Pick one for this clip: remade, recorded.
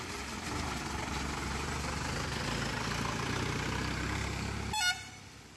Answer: recorded